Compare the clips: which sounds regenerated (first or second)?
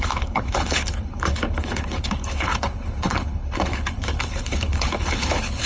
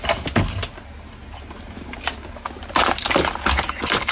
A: first